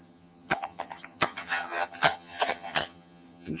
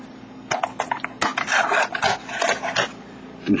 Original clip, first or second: second